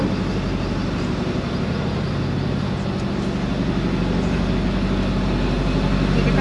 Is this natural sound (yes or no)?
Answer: yes